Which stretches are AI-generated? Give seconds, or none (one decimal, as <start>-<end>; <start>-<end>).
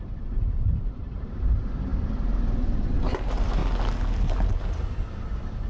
0.0-3.6